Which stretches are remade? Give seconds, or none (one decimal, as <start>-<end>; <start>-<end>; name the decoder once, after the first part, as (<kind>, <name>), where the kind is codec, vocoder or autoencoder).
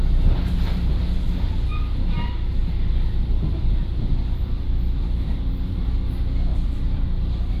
2.6-6.1 (vocoder, BigVGAN v2); 6.5-7.6